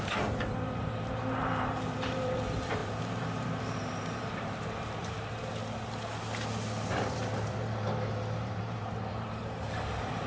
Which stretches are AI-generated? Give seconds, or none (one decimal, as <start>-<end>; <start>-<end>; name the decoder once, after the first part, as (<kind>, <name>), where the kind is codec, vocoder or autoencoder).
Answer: 0.0-5.6 (vocoder, BigVGAN v2); 6.9-10.3